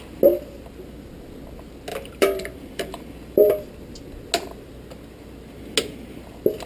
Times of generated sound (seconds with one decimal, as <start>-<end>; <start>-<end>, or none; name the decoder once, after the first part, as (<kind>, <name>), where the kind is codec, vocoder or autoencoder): 1.9-3.7 (vocoder, BigVGAN v2)

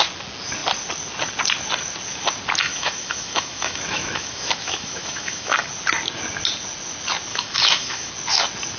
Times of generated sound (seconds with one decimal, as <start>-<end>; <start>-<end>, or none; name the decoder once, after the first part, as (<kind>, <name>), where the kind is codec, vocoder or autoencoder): 2.6-5.7 (autoencoder, DAC-VAE); 7.3-8.1